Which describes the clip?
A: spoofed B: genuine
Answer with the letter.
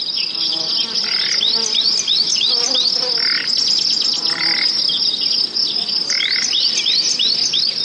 B